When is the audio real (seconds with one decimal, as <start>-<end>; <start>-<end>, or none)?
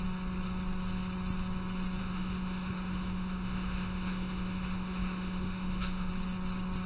0.0-2.0; 6.1-6.9